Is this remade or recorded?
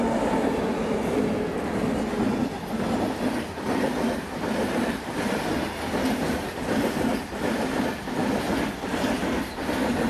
recorded